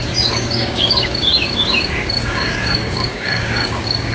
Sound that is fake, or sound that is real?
fake